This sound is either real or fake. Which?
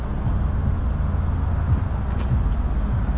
real